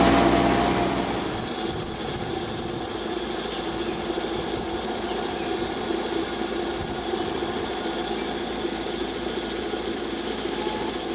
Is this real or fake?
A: real